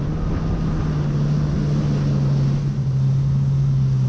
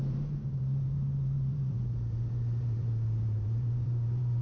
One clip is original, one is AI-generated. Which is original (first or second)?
first